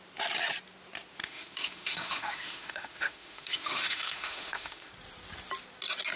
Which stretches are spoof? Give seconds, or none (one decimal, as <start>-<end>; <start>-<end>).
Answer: 1.2-4.9